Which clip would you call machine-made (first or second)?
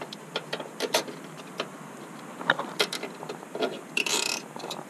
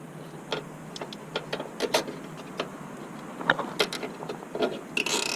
first